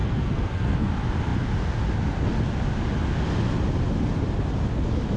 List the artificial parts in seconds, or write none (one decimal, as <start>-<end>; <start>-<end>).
0.0-0.9